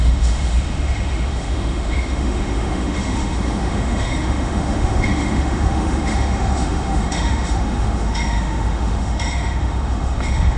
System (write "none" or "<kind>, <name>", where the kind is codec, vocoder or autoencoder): autoencoder, DAC-VAE